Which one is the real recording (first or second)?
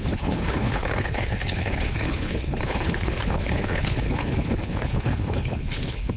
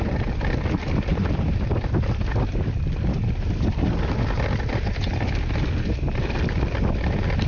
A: second